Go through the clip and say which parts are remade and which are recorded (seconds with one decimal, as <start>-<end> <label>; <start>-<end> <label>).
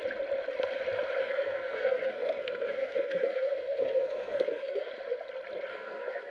0.0-1.2 recorded; 1.2-4.9 remade; 4.9-5.7 recorded; 5.7-6.3 remade